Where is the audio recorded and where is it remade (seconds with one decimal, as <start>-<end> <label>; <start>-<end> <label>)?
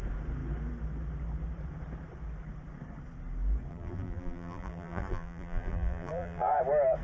0.0-3.7 recorded; 3.7-6.6 remade; 6.6-7.0 recorded